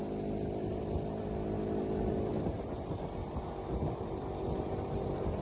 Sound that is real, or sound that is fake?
fake